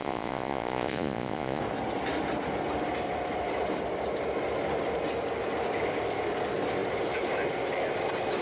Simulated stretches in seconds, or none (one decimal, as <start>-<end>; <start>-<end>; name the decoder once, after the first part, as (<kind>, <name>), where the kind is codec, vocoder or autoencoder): 0.0-1.6 (vocoder, Vocos)